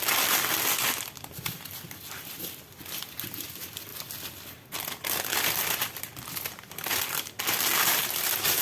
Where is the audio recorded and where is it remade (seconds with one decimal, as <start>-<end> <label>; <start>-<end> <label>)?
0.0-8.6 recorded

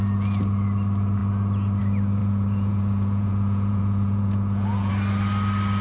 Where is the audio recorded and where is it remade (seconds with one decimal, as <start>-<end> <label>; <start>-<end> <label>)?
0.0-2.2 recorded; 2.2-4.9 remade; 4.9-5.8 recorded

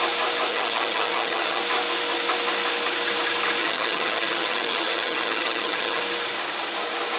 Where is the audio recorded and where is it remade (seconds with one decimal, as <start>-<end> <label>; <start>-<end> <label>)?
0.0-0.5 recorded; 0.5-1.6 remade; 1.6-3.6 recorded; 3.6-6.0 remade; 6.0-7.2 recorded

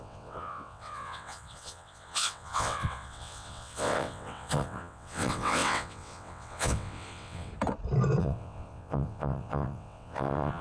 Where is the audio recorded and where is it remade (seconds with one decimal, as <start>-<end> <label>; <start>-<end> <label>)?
0.0-7.5 remade; 7.5-8.2 recorded; 8.2-10.6 remade

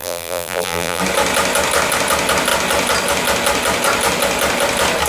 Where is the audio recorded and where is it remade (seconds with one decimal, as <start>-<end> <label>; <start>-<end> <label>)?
0.0-1.0 remade; 1.0-5.1 recorded

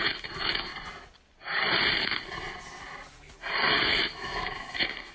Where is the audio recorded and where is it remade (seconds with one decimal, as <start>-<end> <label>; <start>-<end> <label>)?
0.0-0.7 remade; 0.7-3.8 recorded; 3.8-5.1 remade

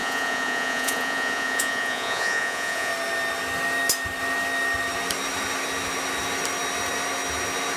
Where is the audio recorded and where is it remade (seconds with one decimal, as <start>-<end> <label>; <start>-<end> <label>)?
0.0-2.9 remade; 2.9-7.8 recorded

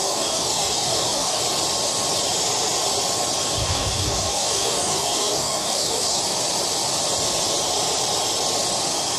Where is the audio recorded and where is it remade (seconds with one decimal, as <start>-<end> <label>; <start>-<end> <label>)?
0.0-1.4 remade; 1.4-3.6 recorded; 3.6-6.2 remade; 6.2-9.2 recorded